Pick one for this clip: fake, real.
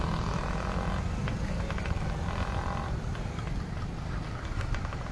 real